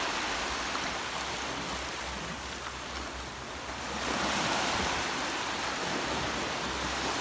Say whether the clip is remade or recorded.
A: recorded